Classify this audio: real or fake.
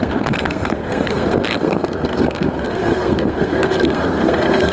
fake